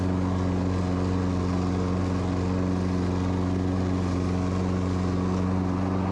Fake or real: real